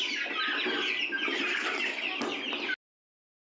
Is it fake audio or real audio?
real